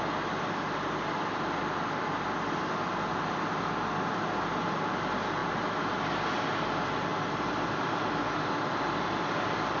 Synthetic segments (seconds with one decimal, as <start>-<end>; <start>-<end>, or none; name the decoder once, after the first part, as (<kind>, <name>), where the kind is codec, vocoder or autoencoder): none